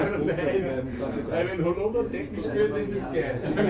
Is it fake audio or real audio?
fake